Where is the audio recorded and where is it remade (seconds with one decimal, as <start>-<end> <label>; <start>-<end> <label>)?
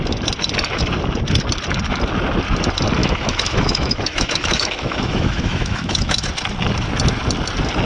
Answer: 0.0-3.0 recorded; 3.0-6.3 remade; 6.3-7.9 recorded